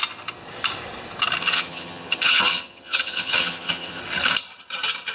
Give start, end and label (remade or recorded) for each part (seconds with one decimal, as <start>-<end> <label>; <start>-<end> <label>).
0.0-1.4 recorded; 1.4-4.0 remade; 4.0-5.1 recorded